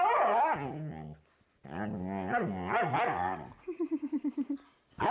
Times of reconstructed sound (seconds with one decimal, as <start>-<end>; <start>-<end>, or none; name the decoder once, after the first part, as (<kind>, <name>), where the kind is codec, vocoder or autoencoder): none